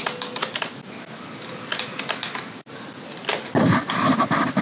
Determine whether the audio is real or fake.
real